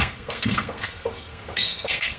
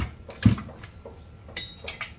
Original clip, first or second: second